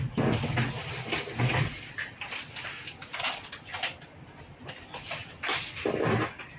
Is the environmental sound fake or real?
real